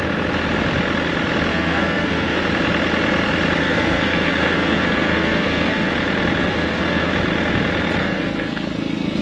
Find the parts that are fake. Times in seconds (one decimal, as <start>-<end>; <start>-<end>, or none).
1.5-2.4; 3.6-5.9; 6.4-7.1; 8.0-9.2